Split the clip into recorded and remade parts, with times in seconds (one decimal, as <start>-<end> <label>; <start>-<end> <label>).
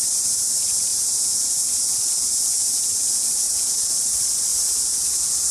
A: 0.0-0.9 recorded; 0.9-4.0 remade; 4.0-4.5 recorded; 4.5-5.5 remade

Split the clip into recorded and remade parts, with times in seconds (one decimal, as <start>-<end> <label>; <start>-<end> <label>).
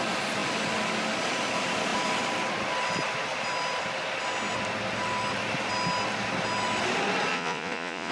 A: 0.0-7.3 recorded; 7.3-8.1 remade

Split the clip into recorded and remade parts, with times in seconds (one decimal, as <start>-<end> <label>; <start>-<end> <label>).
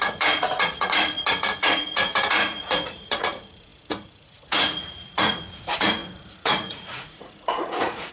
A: 0.0-8.1 remade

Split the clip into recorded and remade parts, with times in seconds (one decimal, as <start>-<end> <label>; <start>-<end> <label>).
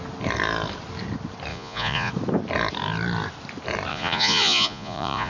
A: 0.0-1.5 recorded; 1.5-2.1 remade; 2.1-3.9 recorded; 3.9-5.3 remade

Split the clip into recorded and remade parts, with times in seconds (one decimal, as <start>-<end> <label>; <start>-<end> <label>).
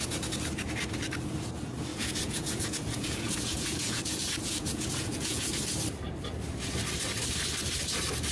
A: 0.0-1.9 recorded; 1.9-5.5 remade; 5.5-8.3 recorded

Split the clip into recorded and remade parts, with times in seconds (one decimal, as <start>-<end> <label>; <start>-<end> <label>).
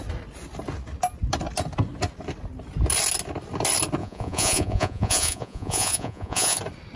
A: 0.0-4.0 recorded; 4.0-6.6 remade; 6.6-7.0 recorded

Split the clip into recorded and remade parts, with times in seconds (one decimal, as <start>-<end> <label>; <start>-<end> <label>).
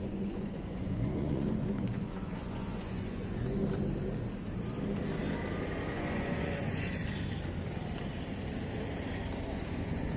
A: 0.0-3.6 remade; 3.6-5.9 recorded; 5.9-7.0 remade; 7.0-9.5 recorded; 9.5-10.2 remade